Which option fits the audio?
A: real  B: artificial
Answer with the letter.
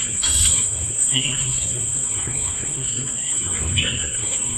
B